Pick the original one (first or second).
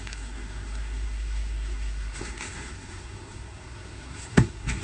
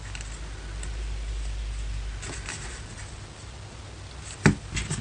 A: second